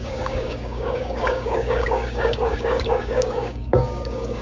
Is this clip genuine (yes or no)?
no